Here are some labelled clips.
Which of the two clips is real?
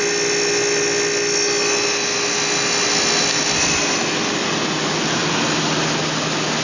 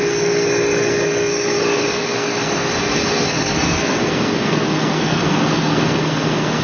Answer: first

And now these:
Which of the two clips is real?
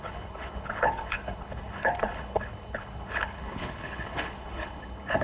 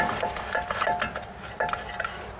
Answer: second